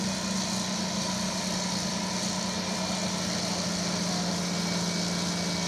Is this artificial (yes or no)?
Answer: no